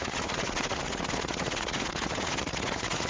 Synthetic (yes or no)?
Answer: yes